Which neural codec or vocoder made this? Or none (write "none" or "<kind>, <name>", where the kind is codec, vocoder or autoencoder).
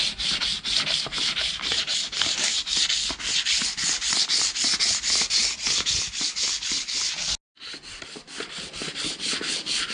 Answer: none